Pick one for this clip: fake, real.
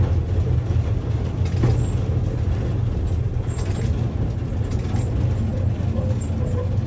real